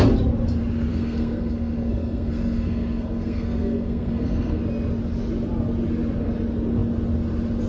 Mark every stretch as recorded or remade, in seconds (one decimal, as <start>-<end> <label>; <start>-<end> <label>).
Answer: 0.0-0.9 recorded; 0.9-4.6 remade; 4.6-7.7 recorded